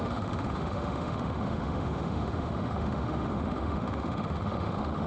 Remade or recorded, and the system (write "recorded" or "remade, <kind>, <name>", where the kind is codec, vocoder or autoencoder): remade, autoencoder, DAC-VAE